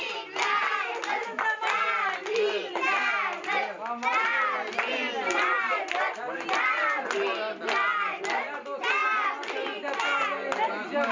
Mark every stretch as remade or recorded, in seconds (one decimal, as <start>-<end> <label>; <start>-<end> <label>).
0.0-11.1 recorded